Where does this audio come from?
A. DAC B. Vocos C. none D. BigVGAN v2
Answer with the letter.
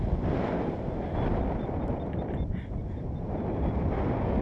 C